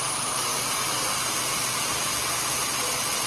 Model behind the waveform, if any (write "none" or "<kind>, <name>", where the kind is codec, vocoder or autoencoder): none